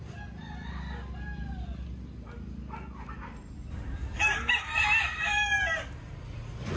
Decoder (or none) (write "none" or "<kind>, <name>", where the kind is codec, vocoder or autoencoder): none